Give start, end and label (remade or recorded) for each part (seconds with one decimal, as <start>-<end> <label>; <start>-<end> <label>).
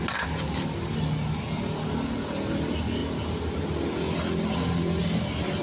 0.0-5.6 recorded